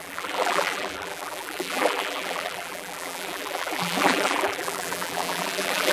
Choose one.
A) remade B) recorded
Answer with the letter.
A